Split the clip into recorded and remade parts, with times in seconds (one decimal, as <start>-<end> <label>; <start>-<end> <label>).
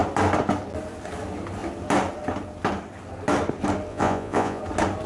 0.0-3.9 recorded; 3.9-4.6 remade; 4.6-5.1 recorded